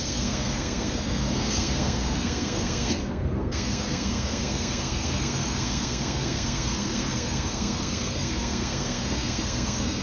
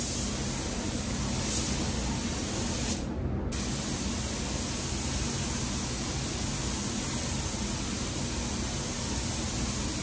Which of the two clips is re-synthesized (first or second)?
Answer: first